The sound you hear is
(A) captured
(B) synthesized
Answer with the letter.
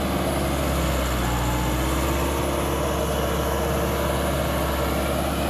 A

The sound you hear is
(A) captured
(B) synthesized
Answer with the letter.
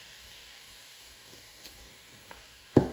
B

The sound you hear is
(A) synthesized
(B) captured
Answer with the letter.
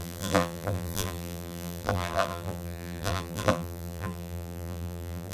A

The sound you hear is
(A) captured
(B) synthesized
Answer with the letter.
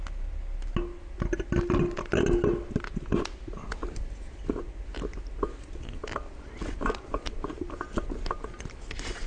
A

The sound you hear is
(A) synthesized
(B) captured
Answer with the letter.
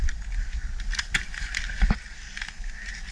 B